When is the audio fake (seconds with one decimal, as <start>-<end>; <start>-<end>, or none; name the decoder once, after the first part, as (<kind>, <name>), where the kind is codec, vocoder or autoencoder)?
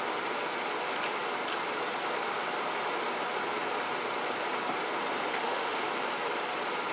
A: 5.3-5.9 (autoencoder, DAC-VAE)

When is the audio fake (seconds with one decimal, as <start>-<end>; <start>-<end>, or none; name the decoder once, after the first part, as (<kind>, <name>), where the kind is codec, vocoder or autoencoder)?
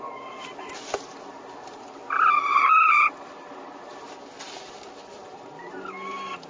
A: none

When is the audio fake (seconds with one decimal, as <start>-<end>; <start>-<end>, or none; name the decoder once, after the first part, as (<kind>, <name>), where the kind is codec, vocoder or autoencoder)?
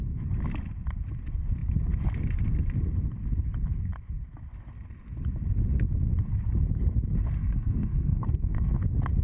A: 7.4-8.7 (codec, SNAC)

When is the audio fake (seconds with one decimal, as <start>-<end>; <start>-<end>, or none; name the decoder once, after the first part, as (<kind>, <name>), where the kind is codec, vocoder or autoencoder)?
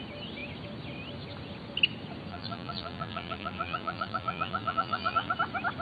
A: 2.3-5.3 (vocoder, BigVGAN v2)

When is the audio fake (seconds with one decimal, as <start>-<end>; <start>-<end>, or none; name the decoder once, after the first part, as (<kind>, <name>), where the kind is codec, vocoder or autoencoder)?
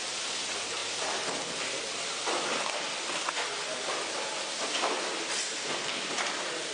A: none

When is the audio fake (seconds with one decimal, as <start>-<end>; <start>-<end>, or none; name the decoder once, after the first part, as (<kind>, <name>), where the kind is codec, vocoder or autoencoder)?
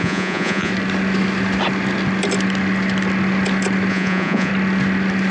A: 0.0-0.7 (vocoder, Vocos); 3.9-4.5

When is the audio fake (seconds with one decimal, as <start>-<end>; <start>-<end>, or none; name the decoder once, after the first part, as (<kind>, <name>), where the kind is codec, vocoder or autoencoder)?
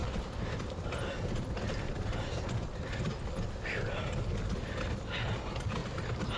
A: none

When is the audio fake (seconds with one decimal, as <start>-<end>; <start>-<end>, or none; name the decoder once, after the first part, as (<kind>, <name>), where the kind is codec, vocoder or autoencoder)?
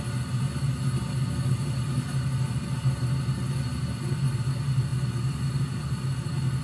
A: none